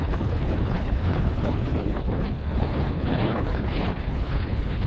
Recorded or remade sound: remade